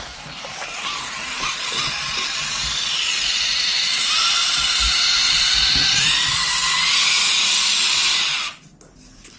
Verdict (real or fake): real